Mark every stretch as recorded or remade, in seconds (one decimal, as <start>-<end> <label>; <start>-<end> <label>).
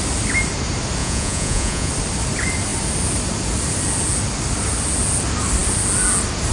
0.0-1.0 recorded; 1.0-1.9 remade; 1.9-6.5 recorded